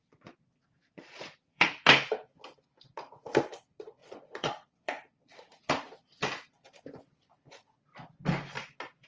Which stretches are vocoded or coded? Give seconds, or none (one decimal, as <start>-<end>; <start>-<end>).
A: 0.0-1.7; 4.0-6.0